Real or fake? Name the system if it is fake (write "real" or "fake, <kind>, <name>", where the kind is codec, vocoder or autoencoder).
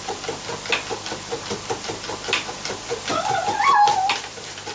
real